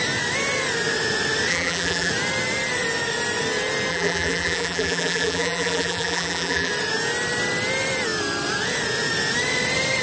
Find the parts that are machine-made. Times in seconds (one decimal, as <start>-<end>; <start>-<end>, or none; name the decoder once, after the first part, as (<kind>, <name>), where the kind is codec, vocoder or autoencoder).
1.5-2.1 (vocoder, BigVGAN v2); 3.9-6.7